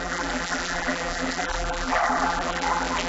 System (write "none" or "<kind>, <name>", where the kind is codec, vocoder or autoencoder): vocoder, BigVGAN v2